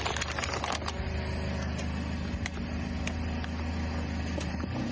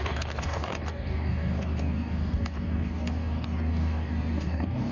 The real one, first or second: first